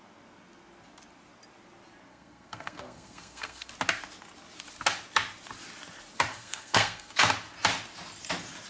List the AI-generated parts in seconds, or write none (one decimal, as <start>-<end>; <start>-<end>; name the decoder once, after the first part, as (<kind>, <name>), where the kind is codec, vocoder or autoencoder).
2.1-3.7 (codec, SNAC); 6.3-7.2